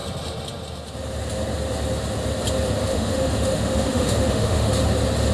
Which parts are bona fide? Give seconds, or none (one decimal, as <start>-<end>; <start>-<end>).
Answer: 0.0-2.9; 4.7-5.3